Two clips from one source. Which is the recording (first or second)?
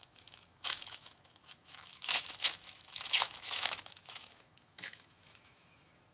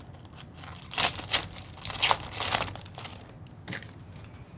second